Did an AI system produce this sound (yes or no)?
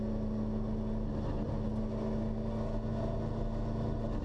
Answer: no